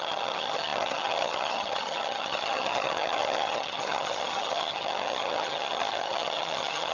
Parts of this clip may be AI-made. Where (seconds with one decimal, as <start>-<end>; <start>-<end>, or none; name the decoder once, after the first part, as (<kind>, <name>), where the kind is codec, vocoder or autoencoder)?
0.0-6.9 (vocoder, HiFi-GAN)